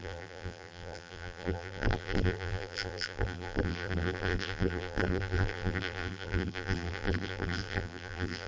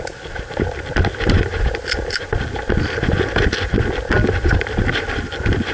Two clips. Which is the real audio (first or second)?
second